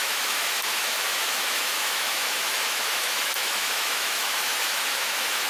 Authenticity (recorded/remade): remade